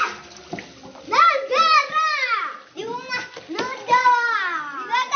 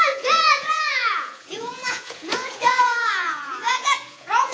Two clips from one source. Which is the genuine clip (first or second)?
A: first